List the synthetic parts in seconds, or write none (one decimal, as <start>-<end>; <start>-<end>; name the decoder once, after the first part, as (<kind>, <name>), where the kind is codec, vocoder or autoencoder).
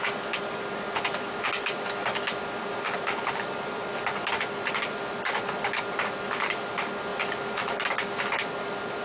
none